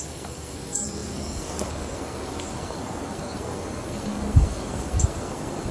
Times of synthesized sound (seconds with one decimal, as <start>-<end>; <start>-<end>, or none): 0.0-5.7